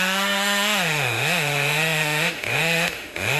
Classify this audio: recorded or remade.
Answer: remade